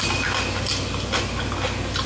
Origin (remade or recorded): recorded